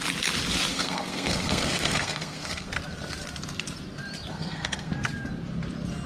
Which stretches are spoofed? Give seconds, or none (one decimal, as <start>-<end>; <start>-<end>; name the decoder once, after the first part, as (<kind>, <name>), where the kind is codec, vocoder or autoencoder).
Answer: 0.7-2.7 (codec, SNAC); 4.3-4.9